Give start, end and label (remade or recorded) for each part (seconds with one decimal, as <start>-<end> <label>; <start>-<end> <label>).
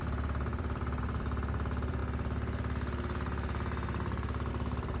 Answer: 0.0-2.0 remade; 2.0-4.5 recorded; 4.5-5.0 remade